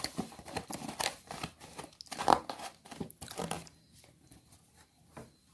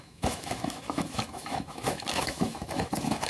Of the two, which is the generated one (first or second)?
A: second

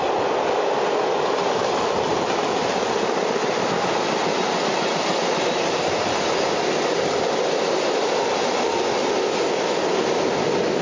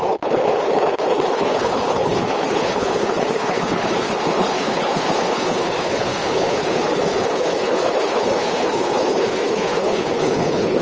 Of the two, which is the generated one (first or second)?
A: second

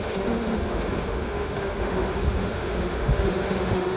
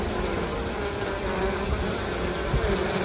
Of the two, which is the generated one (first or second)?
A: first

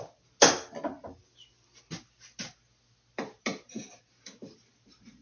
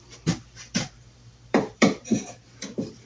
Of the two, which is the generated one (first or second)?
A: second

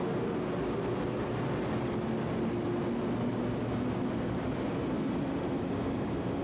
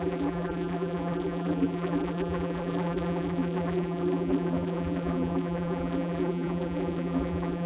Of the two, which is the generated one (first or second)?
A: second